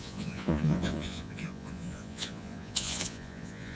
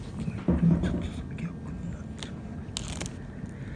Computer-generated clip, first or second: first